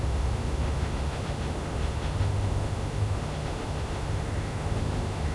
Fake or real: fake